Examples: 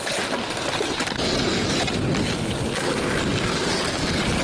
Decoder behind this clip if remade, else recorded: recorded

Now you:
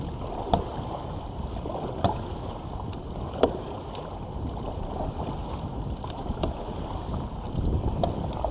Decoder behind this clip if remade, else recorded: recorded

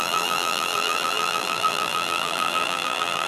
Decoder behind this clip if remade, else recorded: remade, vocoder, BigVGAN v2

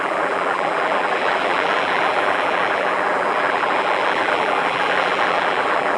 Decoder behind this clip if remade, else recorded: remade, vocoder, BigVGAN v2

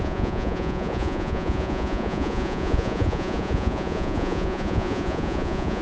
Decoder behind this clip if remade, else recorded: remade, vocoder, Vocos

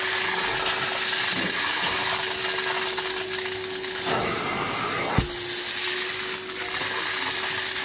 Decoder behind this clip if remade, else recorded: recorded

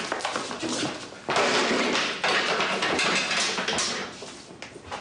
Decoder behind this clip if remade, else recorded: recorded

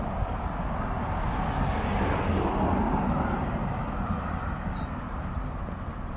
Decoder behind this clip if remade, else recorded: recorded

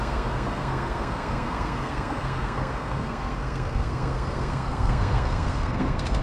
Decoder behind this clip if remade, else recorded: remade, codec, SNAC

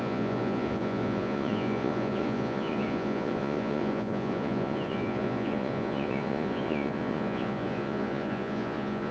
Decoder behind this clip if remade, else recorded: remade, vocoder, Vocos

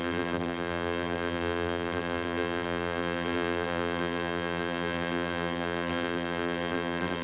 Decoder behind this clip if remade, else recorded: remade, vocoder, BigVGAN v2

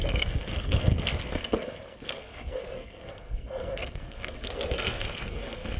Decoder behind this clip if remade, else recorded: remade, codec, SNAC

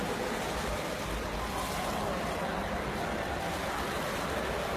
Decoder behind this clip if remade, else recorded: recorded